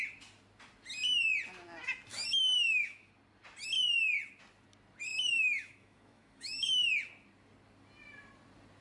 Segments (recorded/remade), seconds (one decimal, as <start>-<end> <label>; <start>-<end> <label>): 0.0-2.1 recorded; 2.1-3.1 remade; 3.1-5.1 recorded; 5.1-6.9 remade; 6.9-8.8 recorded